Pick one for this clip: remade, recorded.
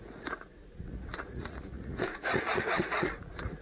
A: remade